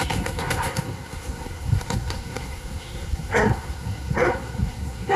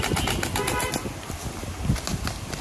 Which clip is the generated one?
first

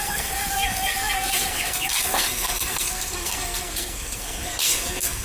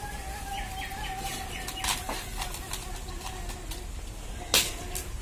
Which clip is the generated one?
first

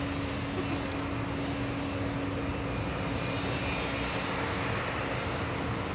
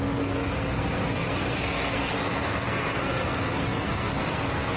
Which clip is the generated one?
second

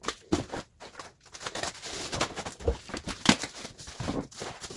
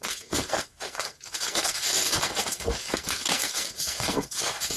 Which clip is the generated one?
second